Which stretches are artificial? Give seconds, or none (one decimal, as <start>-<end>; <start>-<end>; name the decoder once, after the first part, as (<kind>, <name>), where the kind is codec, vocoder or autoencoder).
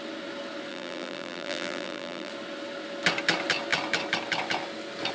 0.7-2.3 (vocoder, BigVGAN v2)